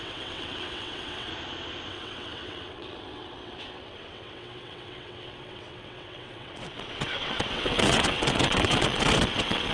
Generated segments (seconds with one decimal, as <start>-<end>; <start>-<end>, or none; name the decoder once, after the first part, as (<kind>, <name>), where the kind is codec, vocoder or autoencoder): 0.0-1.3 (vocoder, WaveNeXt); 1.9-9.7